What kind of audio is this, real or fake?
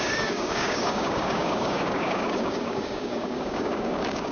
fake